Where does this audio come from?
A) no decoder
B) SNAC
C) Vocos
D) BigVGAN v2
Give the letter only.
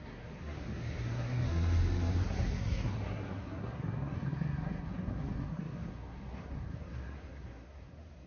B